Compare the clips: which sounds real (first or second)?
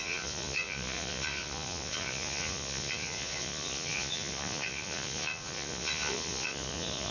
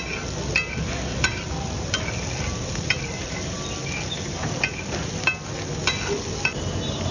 second